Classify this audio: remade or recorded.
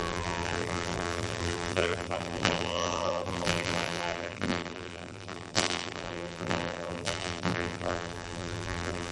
remade